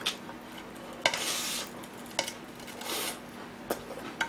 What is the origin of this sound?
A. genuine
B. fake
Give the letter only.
A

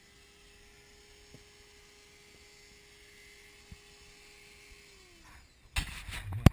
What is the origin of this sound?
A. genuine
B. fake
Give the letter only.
A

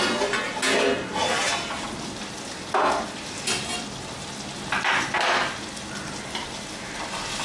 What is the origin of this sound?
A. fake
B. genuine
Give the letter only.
B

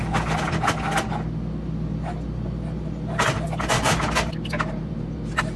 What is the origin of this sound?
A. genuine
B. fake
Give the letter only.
A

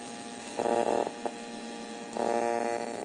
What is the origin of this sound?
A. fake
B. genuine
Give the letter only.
A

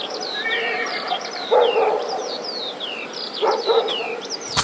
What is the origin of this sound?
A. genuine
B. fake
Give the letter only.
B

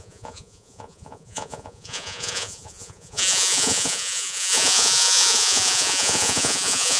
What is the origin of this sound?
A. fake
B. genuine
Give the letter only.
A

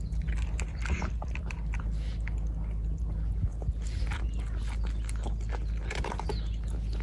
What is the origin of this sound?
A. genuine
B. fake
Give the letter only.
A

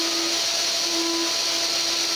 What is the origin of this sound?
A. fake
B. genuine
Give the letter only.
B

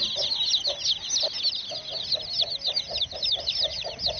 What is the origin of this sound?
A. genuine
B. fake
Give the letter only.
A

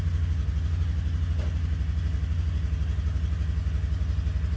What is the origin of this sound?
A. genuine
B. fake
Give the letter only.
A